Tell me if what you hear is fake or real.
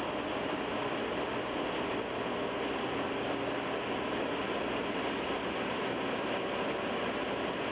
real